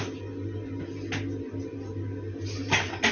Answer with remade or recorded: recorded